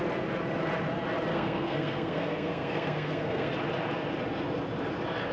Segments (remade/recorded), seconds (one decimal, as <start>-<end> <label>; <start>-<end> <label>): 0.0-1.3 recorded; 1.3-3.5 remade; 3.5-5.3 recorded